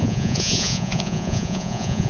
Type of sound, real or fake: fake